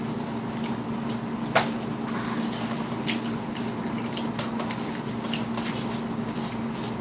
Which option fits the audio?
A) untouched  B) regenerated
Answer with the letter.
A